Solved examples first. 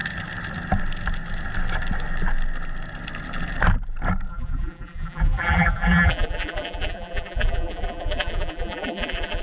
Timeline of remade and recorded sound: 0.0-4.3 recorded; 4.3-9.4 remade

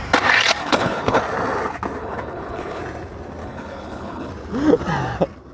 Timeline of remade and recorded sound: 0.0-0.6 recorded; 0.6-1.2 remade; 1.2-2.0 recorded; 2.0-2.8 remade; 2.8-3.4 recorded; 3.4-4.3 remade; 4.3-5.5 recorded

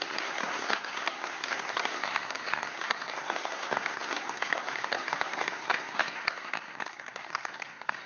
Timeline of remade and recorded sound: 0.0-8.1 remade

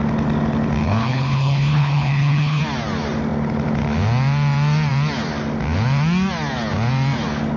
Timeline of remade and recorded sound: 0.0-0.8 recorded; 0.8-2.6 remade; 2.6-7.6 recorded

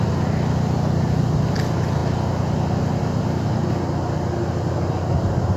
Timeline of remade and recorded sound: 0.0-5.6 recorded

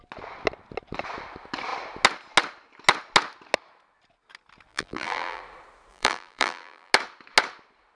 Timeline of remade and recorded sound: 0.0-4.7 recorded; 4.7-5.4 remade; 5.4-5.9 recorded; 5.9-6.9 remade; 6.9-8.0 recorded

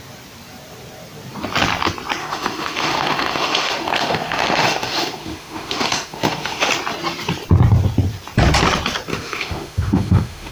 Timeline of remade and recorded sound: 0.0-2.2 recorded; 2.2-6.7 remade; 6.7-9.1 recorded; 9.1-10.5 remade